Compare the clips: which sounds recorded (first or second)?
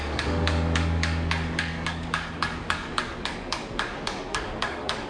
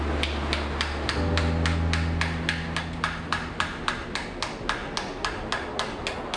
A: second